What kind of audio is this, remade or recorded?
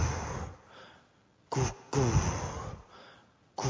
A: recorded